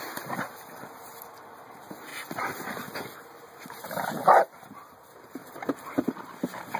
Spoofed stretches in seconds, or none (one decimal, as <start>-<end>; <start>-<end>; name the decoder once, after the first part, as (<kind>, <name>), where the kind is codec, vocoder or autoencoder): 0.0-2.1 (vocoder, BigVGAN v2); 4.6-5.4; 6.2-6.8